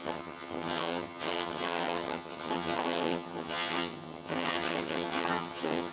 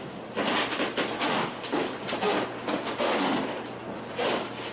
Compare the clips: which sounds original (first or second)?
second